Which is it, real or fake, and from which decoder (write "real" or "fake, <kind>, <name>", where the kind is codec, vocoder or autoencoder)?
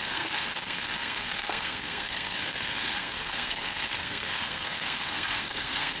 fake, codec, SNAC